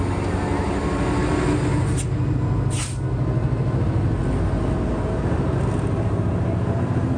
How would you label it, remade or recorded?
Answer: recorded